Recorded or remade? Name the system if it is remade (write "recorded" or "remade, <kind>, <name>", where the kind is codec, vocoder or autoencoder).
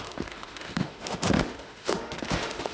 remade, autoencoder, DAC-VAE